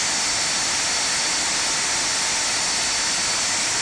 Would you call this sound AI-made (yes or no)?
no